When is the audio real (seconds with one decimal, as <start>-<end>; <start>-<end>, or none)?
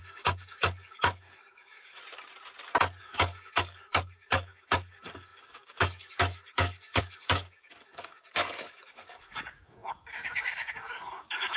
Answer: 2.0-3.0